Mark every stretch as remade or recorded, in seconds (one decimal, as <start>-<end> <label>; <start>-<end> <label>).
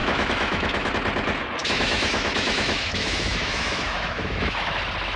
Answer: 0.0-0.9 remade; 0.9-1.6 recorded; 1.6-4.7 remade; 4.7-5.2 recorded